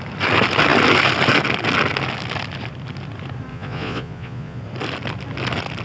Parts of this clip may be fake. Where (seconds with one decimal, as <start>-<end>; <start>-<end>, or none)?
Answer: 3.5-4.6